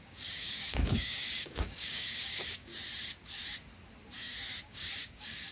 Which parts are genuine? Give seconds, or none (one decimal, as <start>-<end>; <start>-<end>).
2.7-4.6